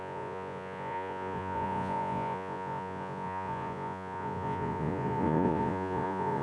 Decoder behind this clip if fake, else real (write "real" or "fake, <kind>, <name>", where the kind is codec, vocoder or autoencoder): fake, vocoder, Vocos